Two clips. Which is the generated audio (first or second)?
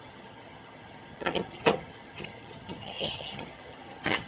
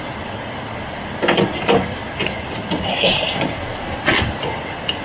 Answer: first